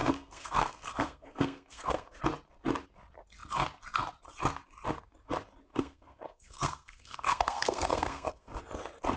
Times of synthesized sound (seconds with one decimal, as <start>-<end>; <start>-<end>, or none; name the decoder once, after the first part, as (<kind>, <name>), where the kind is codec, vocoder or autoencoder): 0.0-2.2 (codec, SNAC); 5.7-8.6